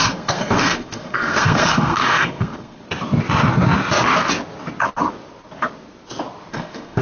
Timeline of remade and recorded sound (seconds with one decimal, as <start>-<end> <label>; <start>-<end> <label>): 0.0-2.8 remade; 2.8-6.5 recorded; 6.5-7.0 remade